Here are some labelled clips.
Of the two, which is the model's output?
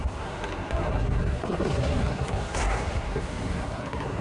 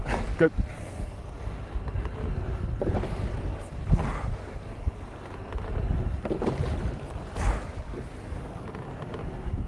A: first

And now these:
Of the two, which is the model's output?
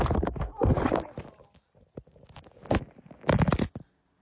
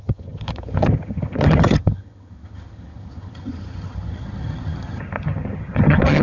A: second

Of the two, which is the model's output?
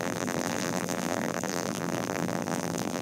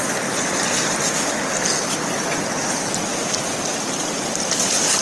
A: first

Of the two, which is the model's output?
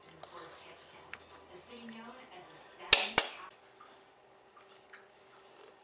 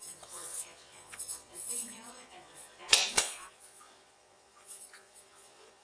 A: second